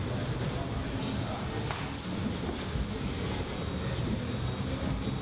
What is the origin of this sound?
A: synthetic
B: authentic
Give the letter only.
B